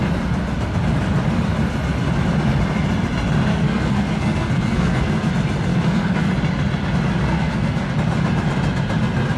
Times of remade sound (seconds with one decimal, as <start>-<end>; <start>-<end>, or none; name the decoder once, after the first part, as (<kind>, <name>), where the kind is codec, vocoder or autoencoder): 3.5-5.3 (codec, SNAC); 5.7-6.3; 7.3-7.9